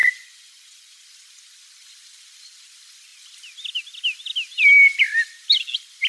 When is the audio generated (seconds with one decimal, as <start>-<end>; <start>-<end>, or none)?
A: 0.0-1.0